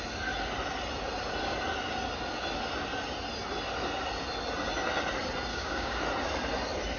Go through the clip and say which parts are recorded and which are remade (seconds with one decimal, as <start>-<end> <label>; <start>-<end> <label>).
0.0-5.5 recorded; 5.5-6.0 remade; 6.0-7.0 recorded